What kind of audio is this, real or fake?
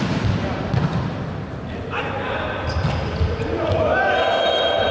real